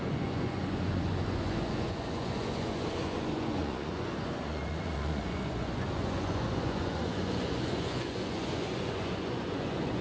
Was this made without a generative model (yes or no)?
no